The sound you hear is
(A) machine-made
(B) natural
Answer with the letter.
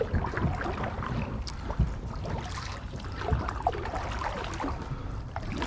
B